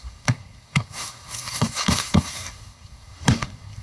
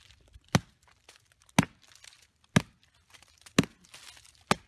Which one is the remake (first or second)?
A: first